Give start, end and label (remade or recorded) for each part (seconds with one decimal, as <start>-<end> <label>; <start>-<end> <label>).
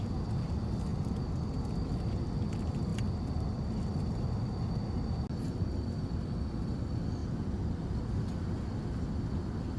0.0-9.8 recorded